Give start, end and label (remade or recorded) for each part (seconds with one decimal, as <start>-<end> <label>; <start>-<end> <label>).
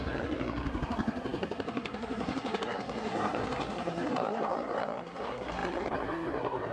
0.0-6.7 remade